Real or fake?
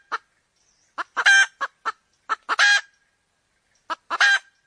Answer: real